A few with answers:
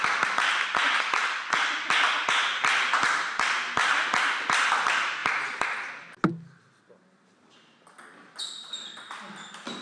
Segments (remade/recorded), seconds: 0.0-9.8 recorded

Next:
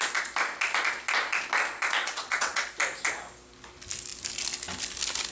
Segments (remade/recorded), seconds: 0.0-2.0 recorded; 2.0-2.7 remade; 2.7-5.3 recorded

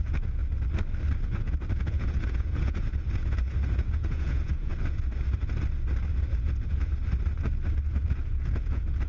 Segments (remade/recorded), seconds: 0.0-0.4 remade; 0.4-1.3 recorded; 1.3-4.7 remade; 4.7-6.4 recorded; 6.4-6.9 remade; 6.9-7.9 recorded; 7.9-9.1 remade

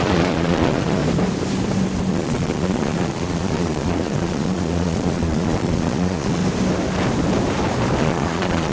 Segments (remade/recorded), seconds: 0.0-1.0 remade; 1.0-2.1 recorded; 2.1-6.4 remade; 6.4-8.0 recorded; 8.0-8.7 remade

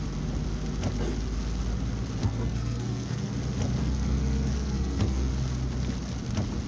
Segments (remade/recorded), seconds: 0.0-2.2 recorded; 2.2-3.3 remade; 3.3-3.8 recorded; 3.8-5.3 remade; 5.3-6.7 recorded

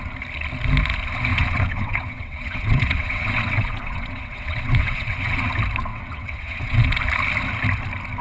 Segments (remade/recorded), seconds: 0.0-1.3 recorded; 1.3-5.5 remade; 5.5-5.9 recorded; 5.9-7.0 remade; 7.0-8.2 recorded

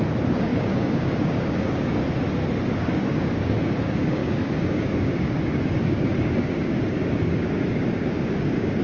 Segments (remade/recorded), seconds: 0.0-2.0 remade; 2.0-2.6 recorded; 2.6-8.8 remade